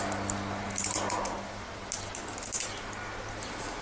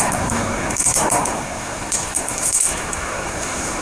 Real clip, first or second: first